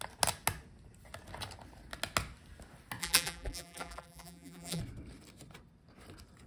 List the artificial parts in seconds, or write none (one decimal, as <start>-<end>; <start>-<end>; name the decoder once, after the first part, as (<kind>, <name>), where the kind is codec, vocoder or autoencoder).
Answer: 3.0-4.8 (vocoder, BigVGAN v2)